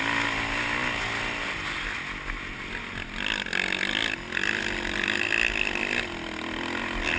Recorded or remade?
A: recorded